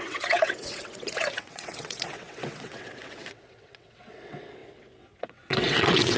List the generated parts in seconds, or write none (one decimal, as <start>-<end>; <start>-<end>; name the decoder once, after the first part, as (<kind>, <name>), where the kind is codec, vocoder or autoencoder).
0.0-6.2 (vocoder, WaveNeXt)